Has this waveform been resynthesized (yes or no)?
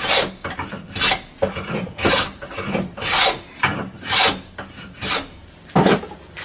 no